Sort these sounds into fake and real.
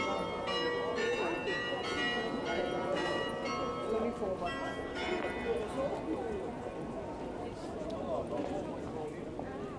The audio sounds real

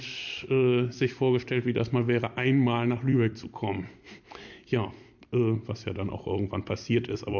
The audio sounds fake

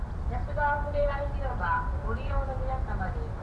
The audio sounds real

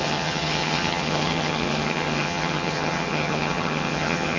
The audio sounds fake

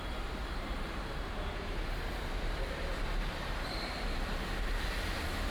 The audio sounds fake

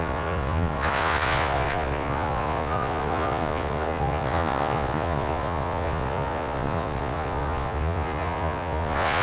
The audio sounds fake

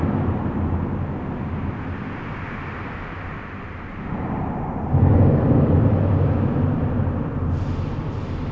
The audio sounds real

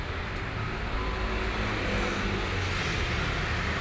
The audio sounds real